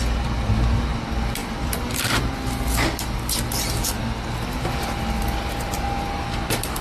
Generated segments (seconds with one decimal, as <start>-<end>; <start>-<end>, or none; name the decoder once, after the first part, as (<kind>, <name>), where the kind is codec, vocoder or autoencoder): 1.4-2.3 (vocoder, BigVGAN v2)